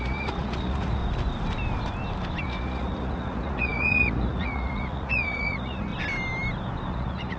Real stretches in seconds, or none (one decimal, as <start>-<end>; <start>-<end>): 1.0-2.4; 5.9-6.9

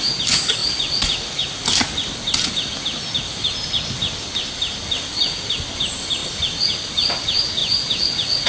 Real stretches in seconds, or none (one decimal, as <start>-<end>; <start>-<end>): 0.0-8.5

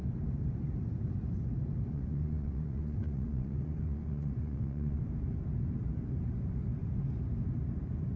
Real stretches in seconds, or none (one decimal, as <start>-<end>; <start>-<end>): 0.0-1.9; 5.0-8.2

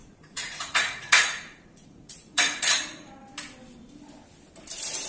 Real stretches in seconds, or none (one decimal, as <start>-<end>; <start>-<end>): 3.1-5.1